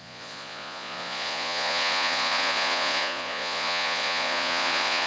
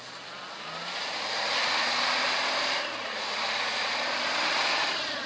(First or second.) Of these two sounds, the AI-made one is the first